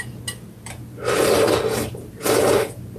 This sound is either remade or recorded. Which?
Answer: recorded